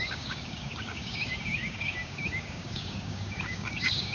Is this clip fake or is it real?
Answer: fake